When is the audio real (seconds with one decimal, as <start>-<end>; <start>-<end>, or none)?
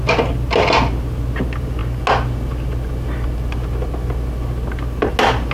0.0-5.5